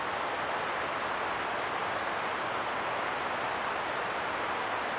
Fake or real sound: real